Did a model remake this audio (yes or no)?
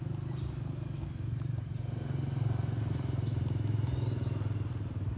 no